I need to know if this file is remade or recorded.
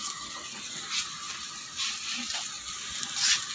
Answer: recorded